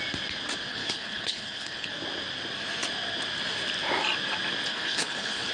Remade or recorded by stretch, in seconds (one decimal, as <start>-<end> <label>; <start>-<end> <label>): 0.0-0.7 recorded; 0.7-1.9 remade; 1.9-4.7 recorded; 4.7-5.5 remade